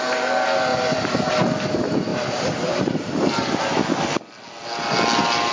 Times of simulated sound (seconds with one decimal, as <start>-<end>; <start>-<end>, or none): 0.7-1.3; 2.1-3.6

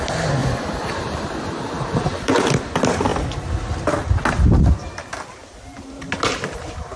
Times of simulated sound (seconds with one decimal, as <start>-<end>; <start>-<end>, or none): 0.4-2.5

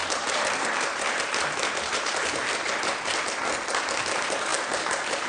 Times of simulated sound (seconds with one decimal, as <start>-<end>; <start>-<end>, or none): 0.0-2.5; 4.5-5.3

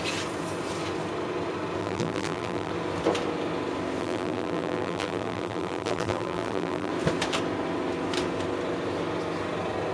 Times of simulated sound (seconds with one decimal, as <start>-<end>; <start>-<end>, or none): 1.8-2.7; 4.0-6.9

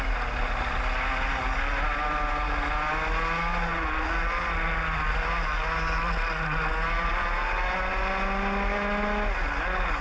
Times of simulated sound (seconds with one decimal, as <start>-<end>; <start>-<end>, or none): none

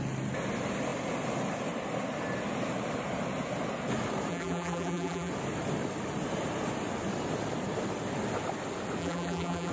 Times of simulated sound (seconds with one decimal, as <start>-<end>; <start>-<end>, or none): 4.3-5.3; 9.0-9.7

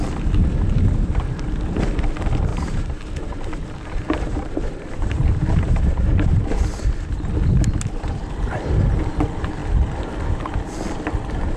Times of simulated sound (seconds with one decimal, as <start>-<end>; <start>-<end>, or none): 2.5-6.9

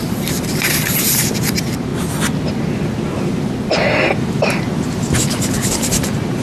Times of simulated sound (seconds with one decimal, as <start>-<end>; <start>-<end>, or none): 0.0-1.9; 5.7-6.4